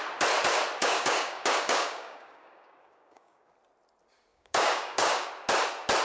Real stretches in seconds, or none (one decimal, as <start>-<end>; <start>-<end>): 0.0-0.8; 3.5-4.3; 5.3-6.0